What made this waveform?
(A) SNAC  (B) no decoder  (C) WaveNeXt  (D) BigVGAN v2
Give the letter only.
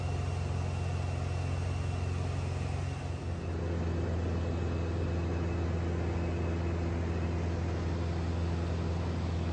B